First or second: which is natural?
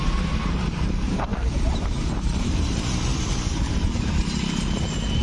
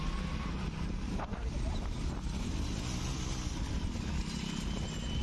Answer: second